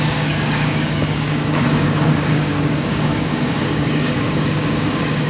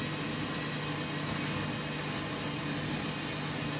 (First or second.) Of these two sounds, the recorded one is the second